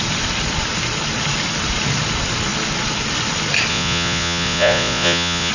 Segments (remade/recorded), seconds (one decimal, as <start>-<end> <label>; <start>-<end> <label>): 0.0-3.7 recorded; 3.7-5.5 remade